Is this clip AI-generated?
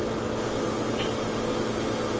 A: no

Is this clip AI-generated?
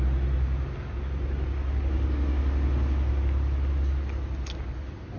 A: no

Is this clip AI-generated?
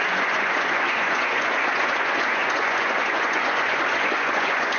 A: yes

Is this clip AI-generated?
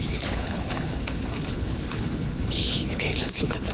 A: yes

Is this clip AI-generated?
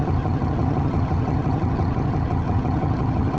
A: yes